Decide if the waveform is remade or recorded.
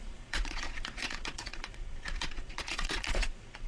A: remade